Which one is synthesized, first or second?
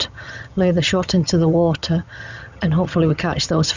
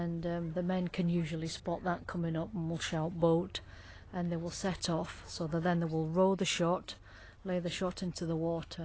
first